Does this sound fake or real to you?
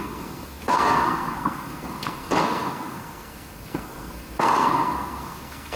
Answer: fake